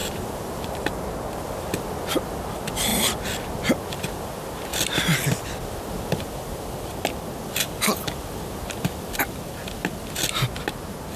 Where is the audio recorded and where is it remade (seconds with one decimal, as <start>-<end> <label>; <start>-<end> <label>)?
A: 0.0-0.9 remade; 0.9-11.2 recorded